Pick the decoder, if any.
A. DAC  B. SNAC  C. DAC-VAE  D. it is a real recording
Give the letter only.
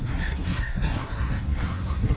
B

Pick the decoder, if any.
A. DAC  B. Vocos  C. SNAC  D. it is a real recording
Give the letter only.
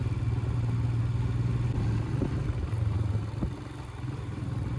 D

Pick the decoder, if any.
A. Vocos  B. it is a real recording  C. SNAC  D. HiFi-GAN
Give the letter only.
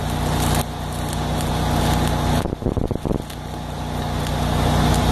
B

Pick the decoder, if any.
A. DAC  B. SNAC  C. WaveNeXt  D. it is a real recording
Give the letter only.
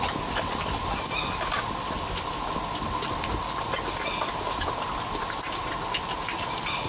D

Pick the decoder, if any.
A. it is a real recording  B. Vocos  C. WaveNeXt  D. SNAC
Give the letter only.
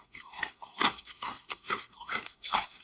D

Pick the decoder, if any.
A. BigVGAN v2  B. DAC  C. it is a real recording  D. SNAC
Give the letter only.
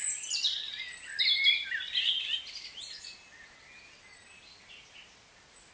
C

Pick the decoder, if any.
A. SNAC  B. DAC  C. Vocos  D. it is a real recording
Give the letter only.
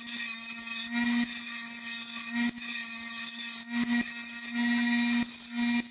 D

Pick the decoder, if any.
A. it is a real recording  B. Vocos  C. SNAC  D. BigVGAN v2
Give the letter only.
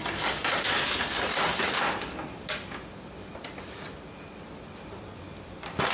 A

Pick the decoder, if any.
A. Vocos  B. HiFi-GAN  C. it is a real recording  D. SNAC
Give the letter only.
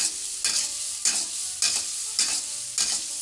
C